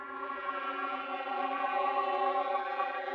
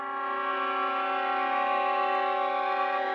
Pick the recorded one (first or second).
second